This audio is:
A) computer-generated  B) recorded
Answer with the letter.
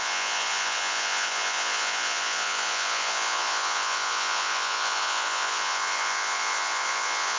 A